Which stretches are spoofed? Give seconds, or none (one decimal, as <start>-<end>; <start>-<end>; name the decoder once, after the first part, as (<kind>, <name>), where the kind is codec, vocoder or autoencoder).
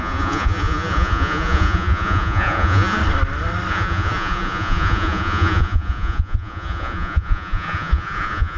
0.0-3.0 (vocoder, Vocos); 3.7-8.6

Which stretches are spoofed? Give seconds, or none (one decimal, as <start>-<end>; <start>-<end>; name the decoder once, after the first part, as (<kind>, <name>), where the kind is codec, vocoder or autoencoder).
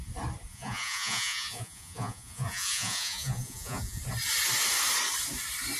0.5-4.0 (vocoder, Vocos)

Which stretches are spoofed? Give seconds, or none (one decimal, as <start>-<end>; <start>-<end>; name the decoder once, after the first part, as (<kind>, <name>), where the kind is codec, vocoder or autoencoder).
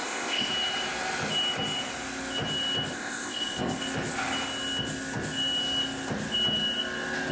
0.0-0.5 (codec, ZipCodec); 2.9-3.8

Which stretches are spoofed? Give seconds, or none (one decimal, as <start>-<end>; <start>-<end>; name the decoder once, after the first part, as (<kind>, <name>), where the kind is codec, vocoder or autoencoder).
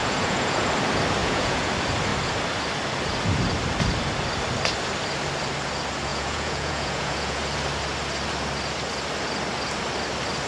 0.0-0.7 (vocoder, Vocos); 1.2-1.7; 6.1-7.4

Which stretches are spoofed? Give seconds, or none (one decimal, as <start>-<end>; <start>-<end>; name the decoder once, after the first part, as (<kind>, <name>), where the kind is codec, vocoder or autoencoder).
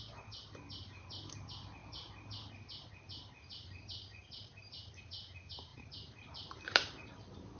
4.2-5.0 (vocoder, BigVGAN v2); 5.7-7.6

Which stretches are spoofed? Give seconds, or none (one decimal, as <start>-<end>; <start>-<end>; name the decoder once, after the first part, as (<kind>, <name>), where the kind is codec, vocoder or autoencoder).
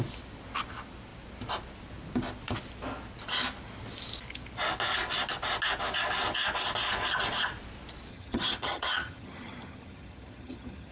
8.1-10.9 (vocoder, HiFi-GAN)